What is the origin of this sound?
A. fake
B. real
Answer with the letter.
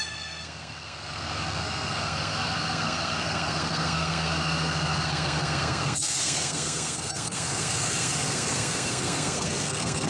A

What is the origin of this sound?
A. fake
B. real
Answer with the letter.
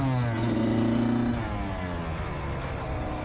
B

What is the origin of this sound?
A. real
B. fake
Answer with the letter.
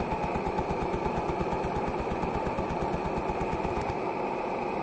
A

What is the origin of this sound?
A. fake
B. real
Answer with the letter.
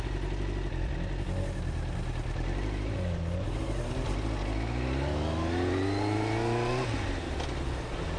B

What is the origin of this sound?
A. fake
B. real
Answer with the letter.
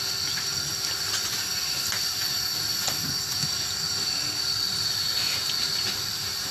B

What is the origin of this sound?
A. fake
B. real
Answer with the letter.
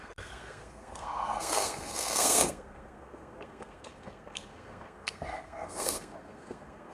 A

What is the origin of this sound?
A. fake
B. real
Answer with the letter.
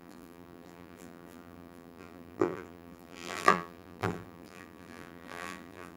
A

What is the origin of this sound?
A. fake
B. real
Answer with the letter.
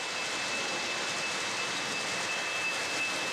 B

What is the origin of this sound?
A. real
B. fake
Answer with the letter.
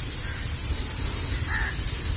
B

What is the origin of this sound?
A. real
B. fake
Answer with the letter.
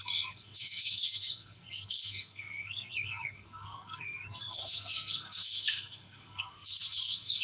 B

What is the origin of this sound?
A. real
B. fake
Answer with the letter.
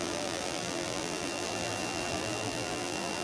B